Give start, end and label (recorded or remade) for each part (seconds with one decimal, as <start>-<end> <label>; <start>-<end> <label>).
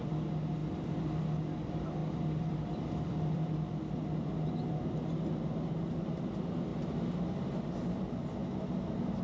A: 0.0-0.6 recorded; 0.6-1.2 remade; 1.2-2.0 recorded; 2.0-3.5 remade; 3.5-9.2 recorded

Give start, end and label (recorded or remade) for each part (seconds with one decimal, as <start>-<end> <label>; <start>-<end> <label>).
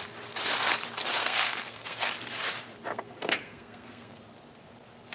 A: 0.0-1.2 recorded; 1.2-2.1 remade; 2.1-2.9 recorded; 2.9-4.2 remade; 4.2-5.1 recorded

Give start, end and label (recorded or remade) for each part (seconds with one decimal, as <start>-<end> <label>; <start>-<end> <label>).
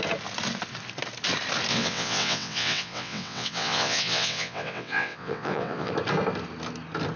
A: 0.0-1.7 recorded; 1.7-5.9 remade; 5.9-7.2 recorded